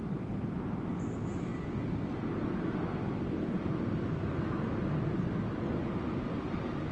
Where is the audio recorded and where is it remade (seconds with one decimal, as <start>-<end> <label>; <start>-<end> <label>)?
0.0-6.9 recorded